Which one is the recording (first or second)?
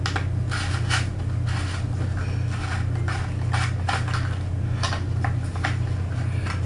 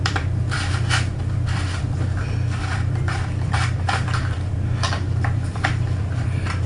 first